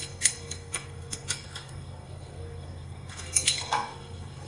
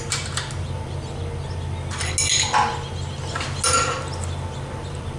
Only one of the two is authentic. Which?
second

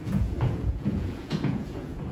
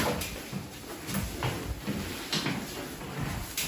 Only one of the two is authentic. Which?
second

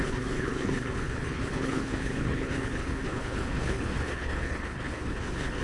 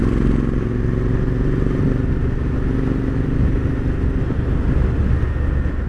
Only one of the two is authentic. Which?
second